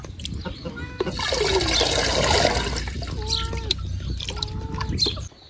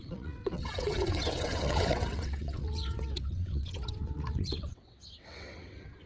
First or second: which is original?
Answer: first